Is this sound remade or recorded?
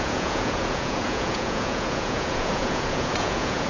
remade